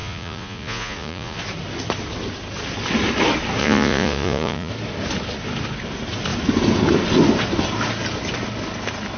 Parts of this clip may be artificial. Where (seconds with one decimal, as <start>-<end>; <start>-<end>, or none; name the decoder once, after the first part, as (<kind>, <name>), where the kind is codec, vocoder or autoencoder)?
0.0-1.4 (vocoder, Vocos); 3.6-4.7